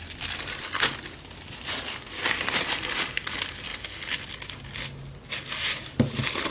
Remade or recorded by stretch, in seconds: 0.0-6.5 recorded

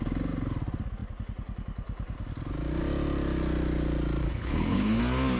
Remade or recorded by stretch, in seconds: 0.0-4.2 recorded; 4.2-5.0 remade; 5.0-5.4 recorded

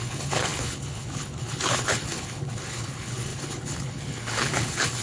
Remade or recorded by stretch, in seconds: 0.0-5.0 remade

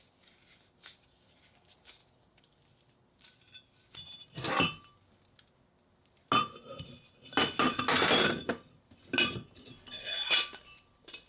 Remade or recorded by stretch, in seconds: 0.0-11.3 recorded